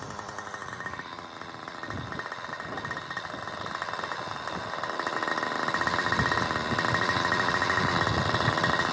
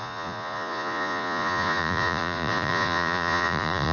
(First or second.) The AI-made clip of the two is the second